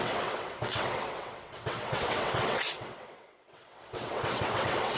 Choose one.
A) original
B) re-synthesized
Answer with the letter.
B